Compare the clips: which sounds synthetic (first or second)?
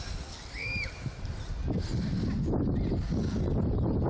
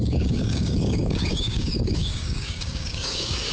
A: second